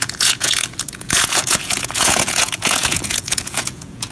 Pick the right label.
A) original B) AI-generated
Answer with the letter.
B